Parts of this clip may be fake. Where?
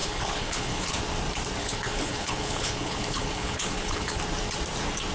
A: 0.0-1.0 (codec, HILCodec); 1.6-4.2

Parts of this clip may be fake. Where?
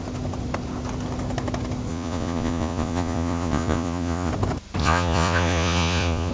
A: 1.9-4.3 (vocoder, Vocos); 4.8-6.3